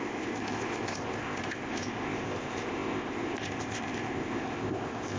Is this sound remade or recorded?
remade